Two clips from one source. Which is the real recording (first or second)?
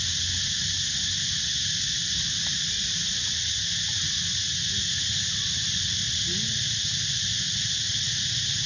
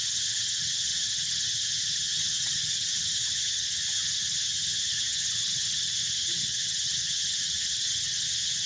first